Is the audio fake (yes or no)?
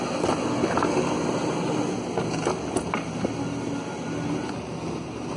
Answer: no